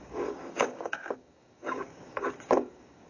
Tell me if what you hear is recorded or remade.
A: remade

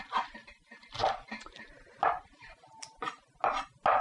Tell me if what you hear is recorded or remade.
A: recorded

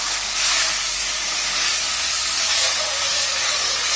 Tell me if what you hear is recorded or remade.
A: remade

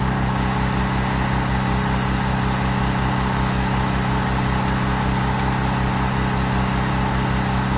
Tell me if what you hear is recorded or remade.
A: recorded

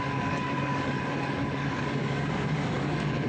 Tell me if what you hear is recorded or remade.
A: remade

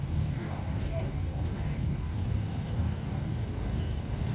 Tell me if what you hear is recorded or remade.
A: remade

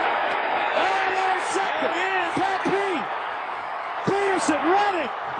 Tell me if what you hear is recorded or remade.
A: remade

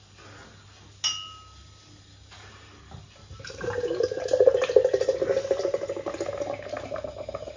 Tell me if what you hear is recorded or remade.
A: recorded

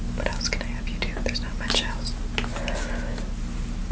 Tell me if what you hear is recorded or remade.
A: recorded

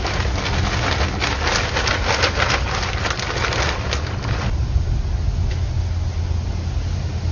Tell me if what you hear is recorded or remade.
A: recorded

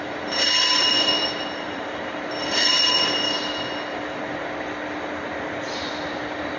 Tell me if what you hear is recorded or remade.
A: recorded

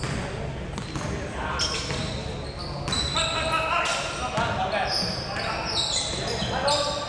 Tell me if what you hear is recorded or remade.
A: recorded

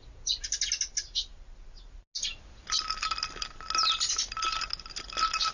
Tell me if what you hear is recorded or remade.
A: recorded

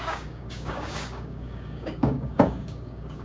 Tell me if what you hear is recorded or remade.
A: remade